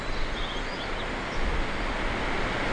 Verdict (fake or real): real